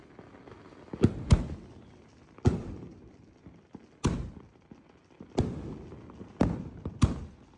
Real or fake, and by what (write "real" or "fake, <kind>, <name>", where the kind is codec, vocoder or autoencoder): real